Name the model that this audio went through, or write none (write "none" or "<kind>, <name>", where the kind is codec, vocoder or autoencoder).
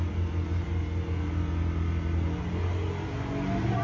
none